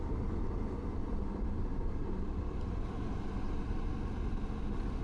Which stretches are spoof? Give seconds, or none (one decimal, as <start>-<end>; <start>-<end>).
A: 0.9-3.9